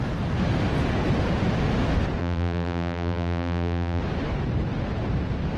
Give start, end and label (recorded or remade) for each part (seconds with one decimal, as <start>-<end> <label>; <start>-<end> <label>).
0.0-2.2 recorded; 2.2-4.0 remade; 4.0-5.6 recorded